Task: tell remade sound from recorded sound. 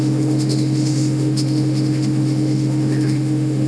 remade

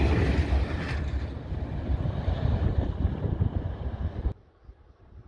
recorded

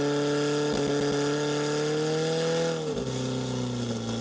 recorded